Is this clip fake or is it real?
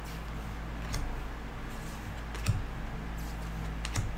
real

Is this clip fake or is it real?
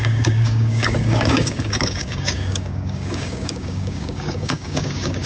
fake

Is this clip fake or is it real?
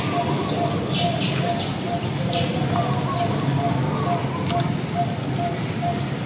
real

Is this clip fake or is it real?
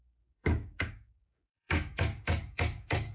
fake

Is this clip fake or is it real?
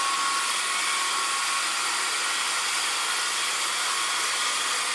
real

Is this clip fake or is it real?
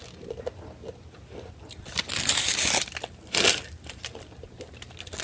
real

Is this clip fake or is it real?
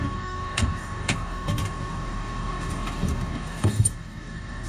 fake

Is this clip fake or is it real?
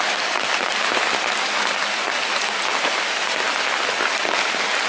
real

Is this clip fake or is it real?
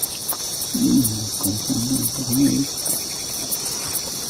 real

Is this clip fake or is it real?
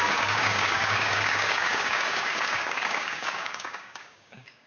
fake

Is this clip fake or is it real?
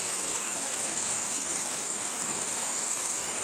fake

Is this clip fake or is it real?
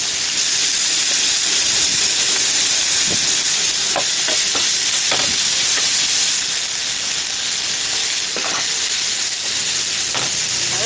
real